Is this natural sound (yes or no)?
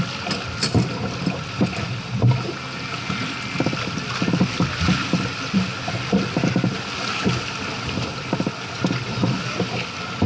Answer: yes